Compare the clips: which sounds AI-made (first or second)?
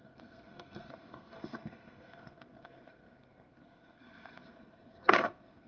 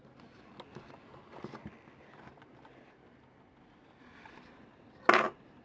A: first